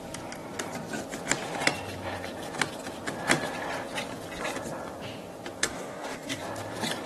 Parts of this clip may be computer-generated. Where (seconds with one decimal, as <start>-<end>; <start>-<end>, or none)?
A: 5.6-6.4